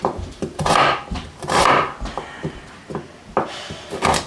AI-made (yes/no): yes